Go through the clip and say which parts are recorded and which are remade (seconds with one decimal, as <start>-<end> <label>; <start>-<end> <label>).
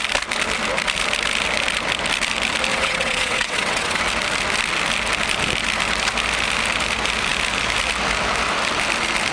0.0-2.7 recorded; 2.7-4.0 remade; 4.0-9.3 recorded